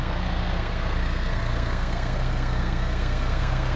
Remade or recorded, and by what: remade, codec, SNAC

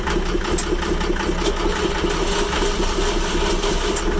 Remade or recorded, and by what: recorded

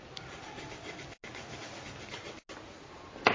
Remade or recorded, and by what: recorded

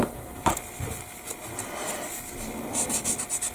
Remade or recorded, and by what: recorded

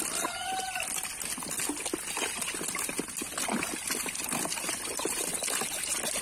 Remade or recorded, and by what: recorded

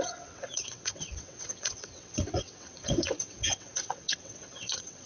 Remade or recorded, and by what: remade, vocoder, WaveNeXt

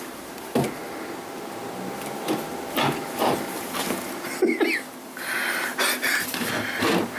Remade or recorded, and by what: recorded